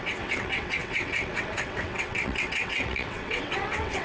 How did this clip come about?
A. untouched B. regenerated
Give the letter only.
B